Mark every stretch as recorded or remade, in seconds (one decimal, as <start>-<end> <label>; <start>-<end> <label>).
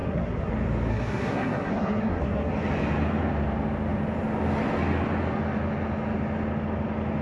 0.0-0.5 remade; 0.5-0.9 recorded; 0.9-2.5 remade; 2.5-7.2 recorded